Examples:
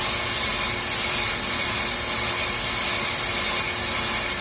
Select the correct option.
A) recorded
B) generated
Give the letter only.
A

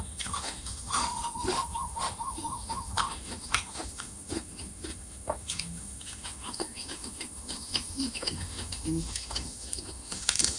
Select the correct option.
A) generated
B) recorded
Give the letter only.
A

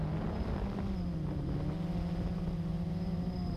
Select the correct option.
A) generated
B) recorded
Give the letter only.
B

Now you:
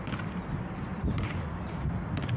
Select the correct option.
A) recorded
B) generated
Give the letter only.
A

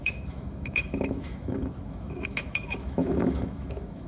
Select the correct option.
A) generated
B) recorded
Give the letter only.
A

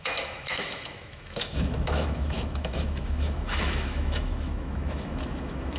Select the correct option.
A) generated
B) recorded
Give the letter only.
A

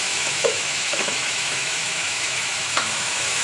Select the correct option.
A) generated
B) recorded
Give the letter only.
A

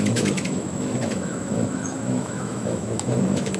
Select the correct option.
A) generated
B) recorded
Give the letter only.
A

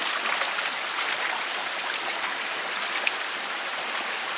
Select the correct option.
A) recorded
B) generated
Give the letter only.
A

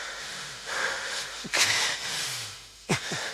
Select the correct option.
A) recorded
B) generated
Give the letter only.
B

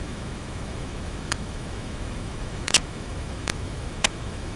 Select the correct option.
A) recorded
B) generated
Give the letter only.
B